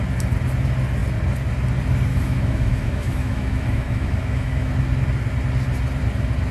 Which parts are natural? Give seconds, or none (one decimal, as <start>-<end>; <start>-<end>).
0.0-2.1; 4.7-6.5